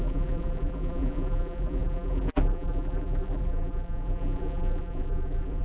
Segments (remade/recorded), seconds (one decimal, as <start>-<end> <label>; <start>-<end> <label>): 0.0-5.6 remade